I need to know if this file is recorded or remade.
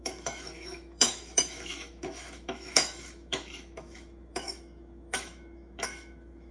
remade